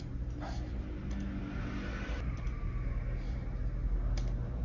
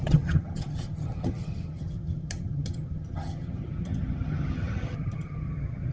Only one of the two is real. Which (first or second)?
first